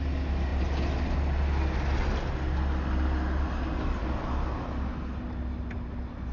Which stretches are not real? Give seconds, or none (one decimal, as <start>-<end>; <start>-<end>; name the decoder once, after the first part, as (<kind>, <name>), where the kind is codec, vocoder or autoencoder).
none